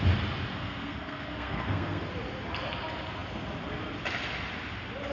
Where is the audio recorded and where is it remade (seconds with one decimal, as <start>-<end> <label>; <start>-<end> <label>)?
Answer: 0.0-0.5 recorded; 0.5-2.1 remade; 2.1-5.1 recorded